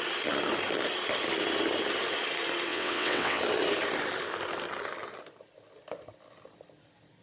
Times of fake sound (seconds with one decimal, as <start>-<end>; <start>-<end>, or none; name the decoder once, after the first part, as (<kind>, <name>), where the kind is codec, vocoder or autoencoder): 2.7-3.4 (vocoder, WaveNeXt)